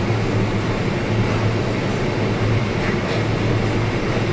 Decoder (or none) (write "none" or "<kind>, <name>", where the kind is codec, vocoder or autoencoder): none